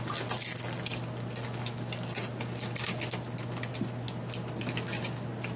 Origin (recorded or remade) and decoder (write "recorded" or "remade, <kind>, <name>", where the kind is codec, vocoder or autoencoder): recorded